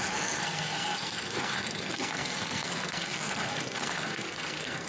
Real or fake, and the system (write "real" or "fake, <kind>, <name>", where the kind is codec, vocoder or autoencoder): fake, codec, SNAC